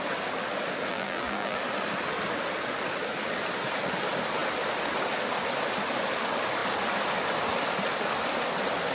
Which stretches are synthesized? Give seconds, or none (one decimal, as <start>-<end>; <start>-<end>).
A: 0.9-1.6